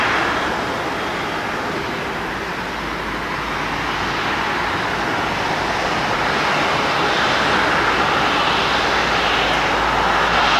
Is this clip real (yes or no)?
yes